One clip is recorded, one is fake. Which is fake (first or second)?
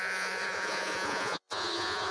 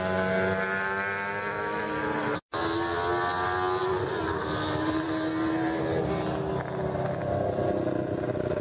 first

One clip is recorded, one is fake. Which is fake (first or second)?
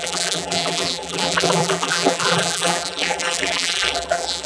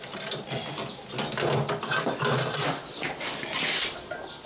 first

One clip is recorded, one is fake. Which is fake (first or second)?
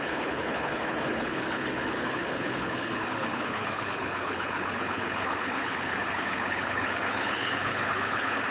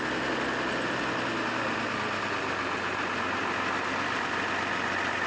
first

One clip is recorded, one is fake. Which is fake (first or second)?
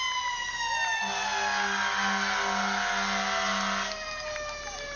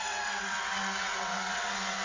second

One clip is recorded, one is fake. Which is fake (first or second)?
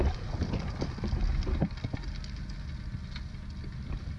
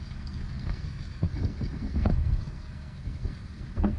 second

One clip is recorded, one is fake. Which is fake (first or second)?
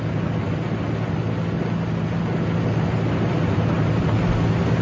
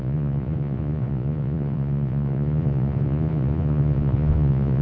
second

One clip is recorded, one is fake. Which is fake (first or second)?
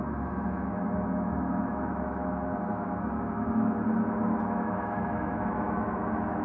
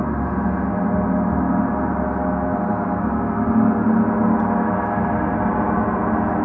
first